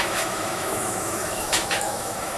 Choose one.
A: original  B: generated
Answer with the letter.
B